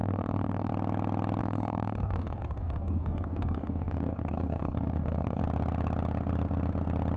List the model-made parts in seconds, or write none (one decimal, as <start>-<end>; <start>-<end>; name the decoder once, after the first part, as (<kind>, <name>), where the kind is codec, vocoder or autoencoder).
0.0-0.7 (codec, DAC); 1.4-5.4